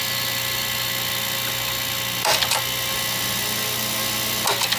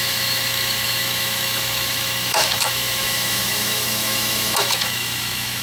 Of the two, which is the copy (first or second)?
second